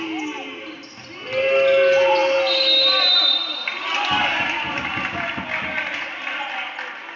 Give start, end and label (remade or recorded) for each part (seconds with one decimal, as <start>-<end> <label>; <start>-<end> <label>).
0.0-7.2 recorded